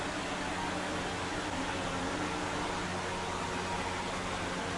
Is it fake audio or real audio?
real